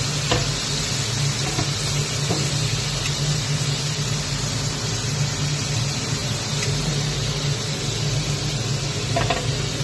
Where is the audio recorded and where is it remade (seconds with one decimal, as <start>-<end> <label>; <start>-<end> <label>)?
0.0-9.8 recorded